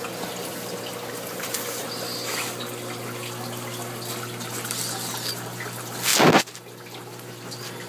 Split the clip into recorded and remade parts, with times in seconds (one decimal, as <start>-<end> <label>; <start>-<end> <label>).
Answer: 0.0-7.9 recorded

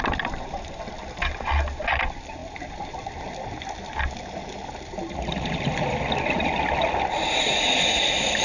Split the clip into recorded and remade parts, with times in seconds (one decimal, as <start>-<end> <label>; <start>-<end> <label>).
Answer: 0.0-8.4 recorded

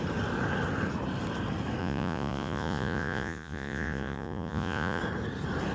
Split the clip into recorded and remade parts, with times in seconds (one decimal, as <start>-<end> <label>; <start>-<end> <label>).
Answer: 0.0-1.8 recorded; 1.8-5.0 remade; 5.0-5.7 recorded

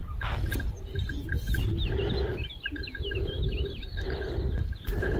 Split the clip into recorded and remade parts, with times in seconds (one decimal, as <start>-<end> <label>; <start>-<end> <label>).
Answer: 0.0-1.7 remade; 1.7-2.3 recorded; 2.3-4.4 remade; 4.4-5.2 recorded

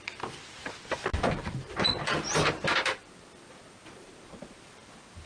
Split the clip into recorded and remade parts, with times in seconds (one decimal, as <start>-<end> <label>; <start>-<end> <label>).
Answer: 0.0-5.3 recorded

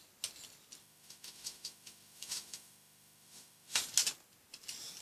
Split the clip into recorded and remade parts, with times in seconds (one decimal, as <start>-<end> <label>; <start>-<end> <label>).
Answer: 0.0-0.8 recorded; 0.8-3.8 remade; 3.8-5.0 recorded

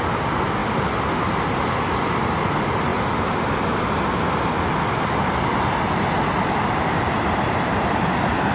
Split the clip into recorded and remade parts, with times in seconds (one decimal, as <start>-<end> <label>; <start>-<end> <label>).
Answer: 0.0-8.5 recorded

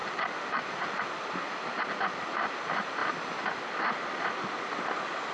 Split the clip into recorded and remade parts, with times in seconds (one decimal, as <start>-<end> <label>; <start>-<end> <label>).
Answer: 0.0-2.5 recorded; 2.5-3.0 remade; 3.0-5.3 recorded